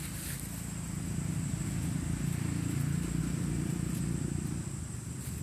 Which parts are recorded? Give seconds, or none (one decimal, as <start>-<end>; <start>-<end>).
0.0-5.4